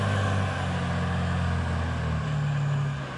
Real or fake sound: real